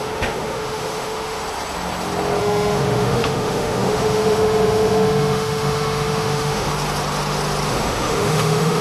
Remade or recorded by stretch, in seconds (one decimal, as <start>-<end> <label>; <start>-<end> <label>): 0.0-1.4 remade; 1.4-2.4 recorded; 2.4-6.7 remade; 6.7-7.7 recorded; 7.7-8.8 remade